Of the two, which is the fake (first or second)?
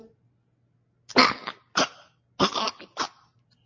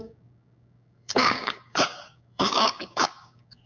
second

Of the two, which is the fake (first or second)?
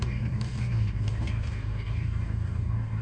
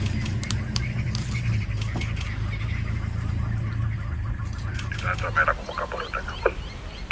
first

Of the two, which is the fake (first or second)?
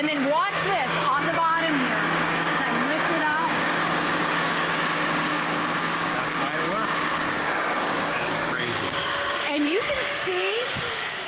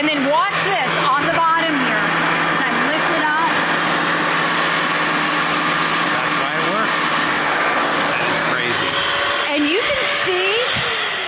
first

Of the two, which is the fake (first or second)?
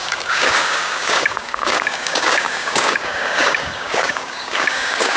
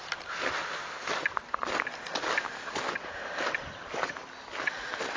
first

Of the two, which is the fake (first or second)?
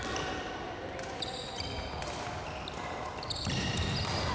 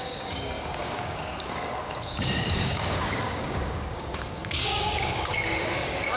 second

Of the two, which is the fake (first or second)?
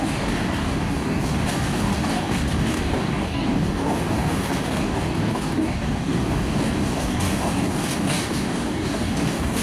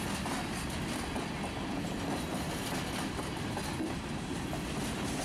first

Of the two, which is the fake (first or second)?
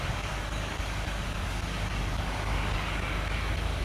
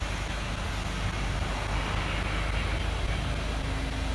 first